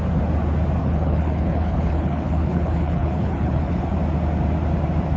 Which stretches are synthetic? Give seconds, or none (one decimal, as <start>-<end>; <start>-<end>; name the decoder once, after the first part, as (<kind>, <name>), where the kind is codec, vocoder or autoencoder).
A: 0.8-3.9 (codec, HILCodec)